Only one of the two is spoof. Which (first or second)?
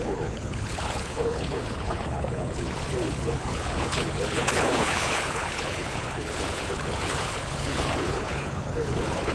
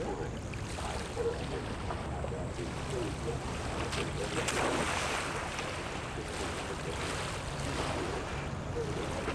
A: first